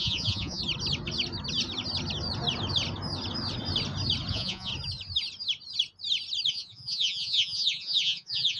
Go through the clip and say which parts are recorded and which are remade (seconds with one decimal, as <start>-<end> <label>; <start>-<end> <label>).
0.0-0.6 remade; 0.6-4.3 recorded; 4.3-4.7 remade; 4.7-6.5 recorded; 6.5-8.6 remade